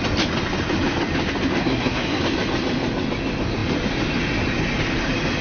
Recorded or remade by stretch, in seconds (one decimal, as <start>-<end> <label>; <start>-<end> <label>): 0.0-1.6 recorded; 1.6-2.2 remade; 2.2-5.4 recorded